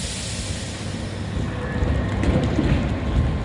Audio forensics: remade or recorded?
recorded